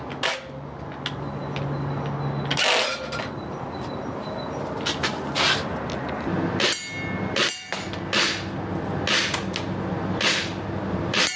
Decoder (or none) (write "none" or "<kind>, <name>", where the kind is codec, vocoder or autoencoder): none